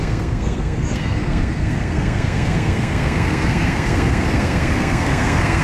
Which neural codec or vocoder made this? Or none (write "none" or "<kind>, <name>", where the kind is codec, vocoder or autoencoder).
codec, SNAC